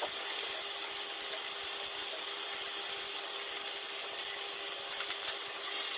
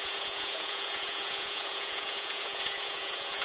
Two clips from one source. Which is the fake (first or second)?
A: second